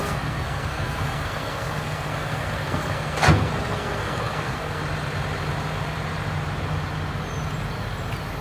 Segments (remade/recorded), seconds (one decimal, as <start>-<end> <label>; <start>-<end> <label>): 0.0-4.8 remade; 4.8-8.4 recorded